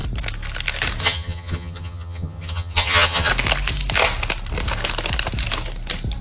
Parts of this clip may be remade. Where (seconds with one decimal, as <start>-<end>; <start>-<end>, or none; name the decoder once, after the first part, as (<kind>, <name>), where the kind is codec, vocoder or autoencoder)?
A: 1.0-3.3 (vocoder, HiFi-GAN)